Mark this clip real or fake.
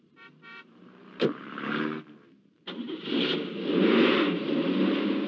fake